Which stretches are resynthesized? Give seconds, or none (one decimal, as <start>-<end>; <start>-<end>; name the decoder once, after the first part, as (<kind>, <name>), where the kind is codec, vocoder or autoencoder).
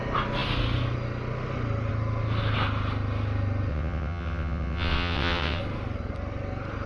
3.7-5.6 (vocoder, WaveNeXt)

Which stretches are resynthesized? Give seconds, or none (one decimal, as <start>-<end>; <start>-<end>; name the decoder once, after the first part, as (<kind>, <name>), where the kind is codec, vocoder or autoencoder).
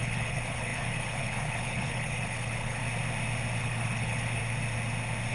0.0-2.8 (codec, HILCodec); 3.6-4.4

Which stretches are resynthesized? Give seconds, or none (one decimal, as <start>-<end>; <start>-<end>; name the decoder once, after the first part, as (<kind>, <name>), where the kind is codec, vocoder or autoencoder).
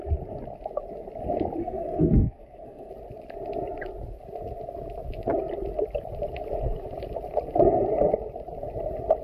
1.6-2.9 (codec, SNAC)